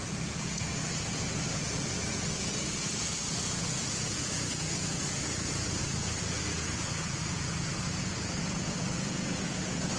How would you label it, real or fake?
fake